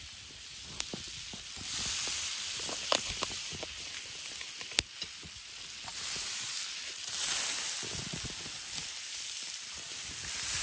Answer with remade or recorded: recorded